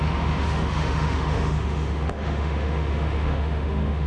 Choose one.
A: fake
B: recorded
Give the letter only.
A